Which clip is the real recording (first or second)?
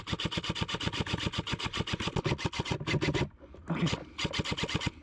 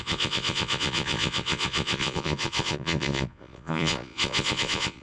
first